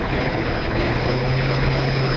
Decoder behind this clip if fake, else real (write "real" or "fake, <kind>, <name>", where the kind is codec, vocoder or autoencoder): fake, codec, HILCodec